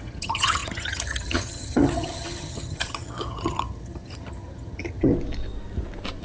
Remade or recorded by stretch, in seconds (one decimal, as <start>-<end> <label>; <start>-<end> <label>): 0.0-5.1 remade; 5.1-6.2 recorded